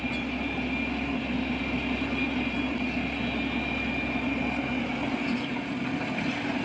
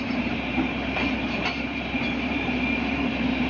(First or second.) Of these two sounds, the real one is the first